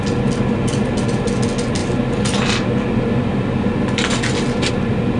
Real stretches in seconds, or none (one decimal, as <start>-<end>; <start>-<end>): 0.0-5.2